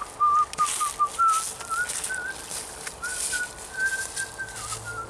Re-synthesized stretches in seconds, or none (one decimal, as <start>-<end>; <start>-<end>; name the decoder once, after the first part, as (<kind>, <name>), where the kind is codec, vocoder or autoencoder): none